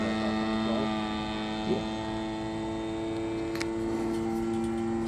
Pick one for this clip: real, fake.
real